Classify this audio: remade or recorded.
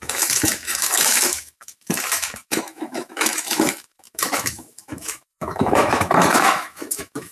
remade